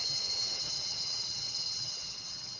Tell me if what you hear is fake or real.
fake